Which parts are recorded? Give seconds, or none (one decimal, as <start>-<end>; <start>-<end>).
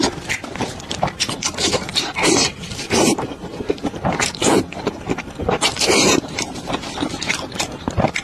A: none